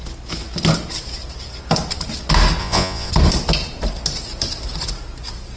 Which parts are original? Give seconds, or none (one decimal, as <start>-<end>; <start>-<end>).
0.0-2.6; 3.1-5.6